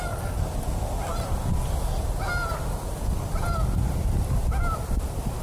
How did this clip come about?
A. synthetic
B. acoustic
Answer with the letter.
B